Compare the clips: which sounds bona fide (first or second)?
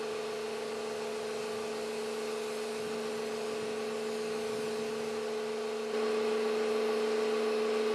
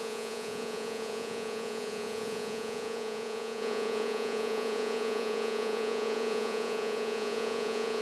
first